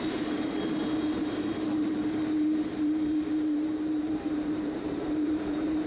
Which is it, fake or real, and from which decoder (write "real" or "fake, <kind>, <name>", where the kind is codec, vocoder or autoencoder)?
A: fake, vocoder, BigVGAN v2